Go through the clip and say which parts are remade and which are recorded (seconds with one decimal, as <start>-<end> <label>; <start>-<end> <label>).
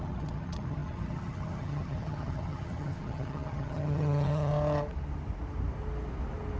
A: 0.0-4.5 remade; 4.5-6.6 recorded